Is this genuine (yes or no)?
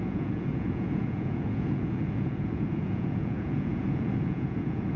no